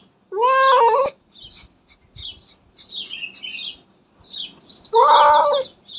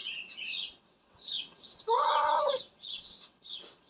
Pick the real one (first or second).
first